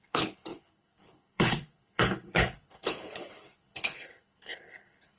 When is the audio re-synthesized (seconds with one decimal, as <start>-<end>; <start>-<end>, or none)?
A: 0.0-5.2